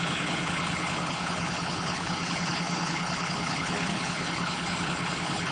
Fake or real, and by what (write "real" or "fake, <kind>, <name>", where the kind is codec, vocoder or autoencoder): fake, codec, HILCodec